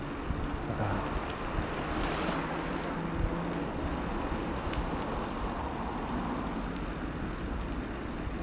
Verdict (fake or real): real